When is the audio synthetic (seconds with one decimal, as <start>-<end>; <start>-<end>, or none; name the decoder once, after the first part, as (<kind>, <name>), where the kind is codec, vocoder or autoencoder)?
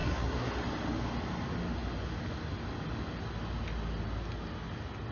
0.0-0.5 (codec, SNAC)